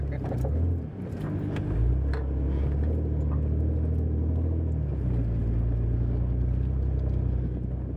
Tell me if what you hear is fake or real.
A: real